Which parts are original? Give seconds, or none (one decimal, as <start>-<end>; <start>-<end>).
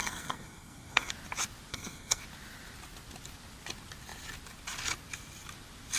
1.1-1.7; 2.2-6.0